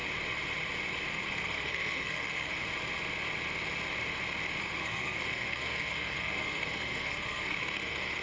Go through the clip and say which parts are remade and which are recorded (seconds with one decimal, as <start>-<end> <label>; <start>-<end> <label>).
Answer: 0.0-1.1 recorded; 1.1-2.6 remade; 2.6-4.6 recorded; 4.6-8.2 remade